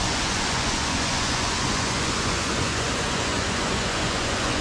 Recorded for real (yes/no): no